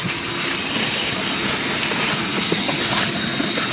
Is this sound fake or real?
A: real